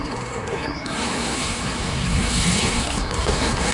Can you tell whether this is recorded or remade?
remade